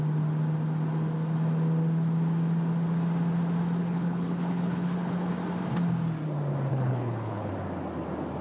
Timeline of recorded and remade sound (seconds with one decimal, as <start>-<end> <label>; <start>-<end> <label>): 0.0-3.8 recorded; 3.8-5.3 remade; 5.3-6.7 recorded; 6.7-7.5 remade; 7.5-8.4 recorded